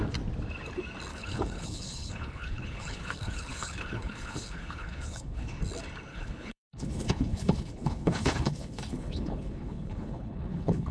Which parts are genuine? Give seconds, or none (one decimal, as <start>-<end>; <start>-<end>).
0.0-1.1; 5.6-6.1